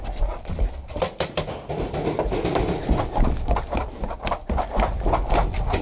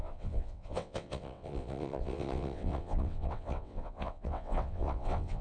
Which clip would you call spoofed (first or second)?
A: second